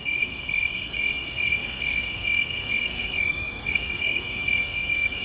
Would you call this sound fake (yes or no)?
yes